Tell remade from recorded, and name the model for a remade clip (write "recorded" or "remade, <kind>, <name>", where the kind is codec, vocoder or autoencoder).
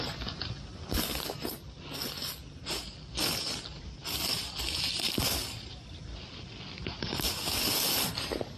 recorded